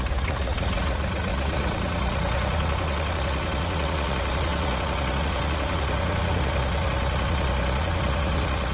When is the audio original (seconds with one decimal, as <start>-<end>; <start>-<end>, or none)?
none